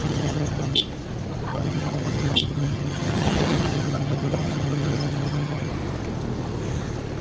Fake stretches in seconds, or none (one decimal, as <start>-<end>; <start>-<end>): 0.0-0.8; 1.5-5.7